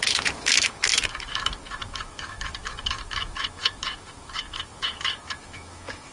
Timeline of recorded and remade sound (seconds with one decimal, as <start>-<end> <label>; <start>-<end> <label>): 0.0-6.1 remade